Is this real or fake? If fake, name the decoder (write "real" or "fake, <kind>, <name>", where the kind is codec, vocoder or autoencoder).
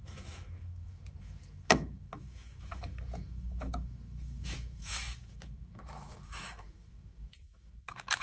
fake, autoencoder, DAC-VAE